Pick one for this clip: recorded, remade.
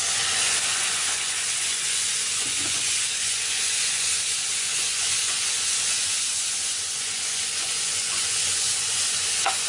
remade